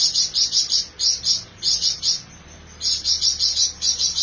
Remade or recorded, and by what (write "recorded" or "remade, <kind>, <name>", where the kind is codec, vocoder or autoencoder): remade, vocoder, BigVGAN v2